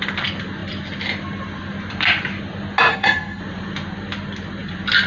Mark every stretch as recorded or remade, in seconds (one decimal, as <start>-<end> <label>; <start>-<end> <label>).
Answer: 0.0-2.9 recorded; 2.9-3.4 remade; 3.4-5.1 recorded